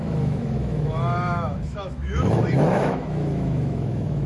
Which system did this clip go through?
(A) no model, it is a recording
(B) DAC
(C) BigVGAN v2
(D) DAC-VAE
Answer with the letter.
D